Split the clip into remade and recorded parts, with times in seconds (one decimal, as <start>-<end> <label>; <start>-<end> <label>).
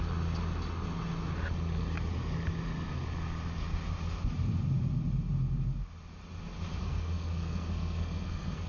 0.0-6.8 recorded; 6.8-8.7 remade